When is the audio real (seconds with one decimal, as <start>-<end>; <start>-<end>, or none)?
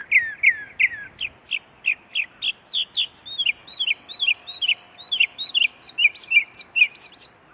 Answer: 0.0-7.5